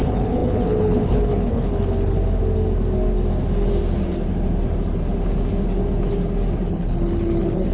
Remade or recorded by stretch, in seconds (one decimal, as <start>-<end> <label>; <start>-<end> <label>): 0.0-2.2 remade; 2.2-6.7 recorded; 6.7-7.7 remade